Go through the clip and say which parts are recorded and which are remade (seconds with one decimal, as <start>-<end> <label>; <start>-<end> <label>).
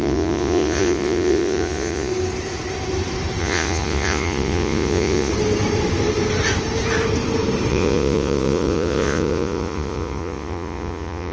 0.0-2.1 remade; 2.1-3.4 recorded; 3.4-5.3 remade; 5.3-7.7 recorded; 7.7-11.3 remade